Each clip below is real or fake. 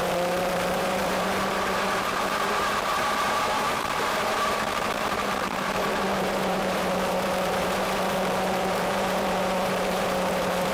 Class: fake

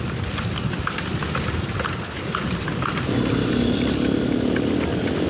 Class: fake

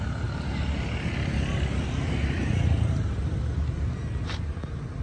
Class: real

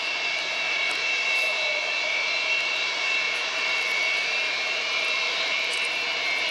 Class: fake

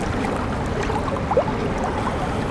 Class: real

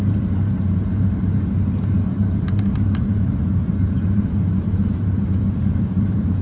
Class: fake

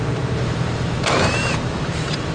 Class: fake